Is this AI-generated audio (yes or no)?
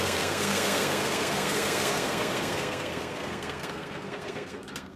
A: yes